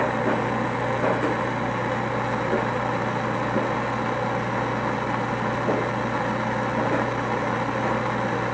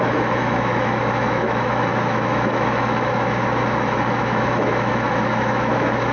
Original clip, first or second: first